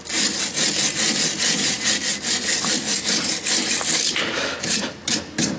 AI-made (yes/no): no